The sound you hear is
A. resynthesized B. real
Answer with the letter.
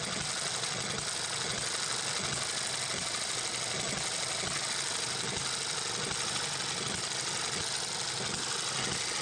B